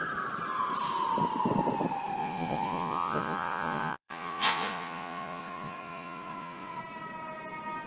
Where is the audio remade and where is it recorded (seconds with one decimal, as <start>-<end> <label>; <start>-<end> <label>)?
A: 0.0-2.2 recorded; 2.2-6.8 remade; 6.8-7.9 recorded